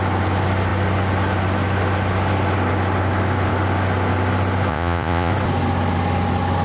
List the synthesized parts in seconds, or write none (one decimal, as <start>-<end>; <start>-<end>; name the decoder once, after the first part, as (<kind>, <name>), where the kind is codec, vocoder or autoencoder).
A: 4.7-5.3 (vocoder, Vocos)